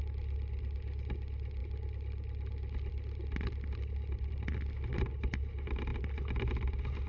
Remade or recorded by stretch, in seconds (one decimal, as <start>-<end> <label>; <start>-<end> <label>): 0.0-7.1 recorded